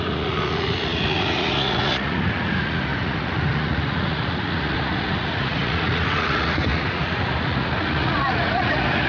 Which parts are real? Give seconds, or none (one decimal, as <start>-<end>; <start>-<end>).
none